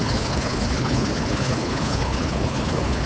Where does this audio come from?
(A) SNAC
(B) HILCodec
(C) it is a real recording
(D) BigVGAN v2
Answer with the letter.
B